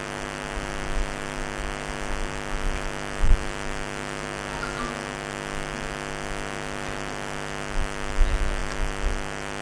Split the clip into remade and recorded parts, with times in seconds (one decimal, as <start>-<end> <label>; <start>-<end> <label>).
0.0-9.6 recorded